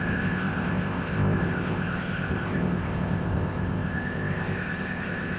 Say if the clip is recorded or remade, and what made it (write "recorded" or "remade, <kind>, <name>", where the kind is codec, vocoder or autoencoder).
remade, codec, ZipCodec